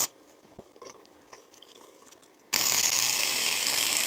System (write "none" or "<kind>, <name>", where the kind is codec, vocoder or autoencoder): codec, DAC